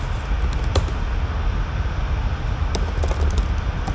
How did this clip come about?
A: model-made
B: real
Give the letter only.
B